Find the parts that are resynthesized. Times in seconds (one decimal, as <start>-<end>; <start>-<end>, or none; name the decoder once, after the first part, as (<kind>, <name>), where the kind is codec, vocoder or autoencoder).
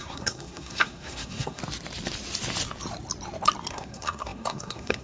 0.0-1.6 (codec, SNAC); 3.7-5.0